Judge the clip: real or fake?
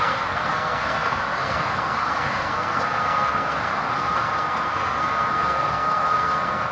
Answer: fake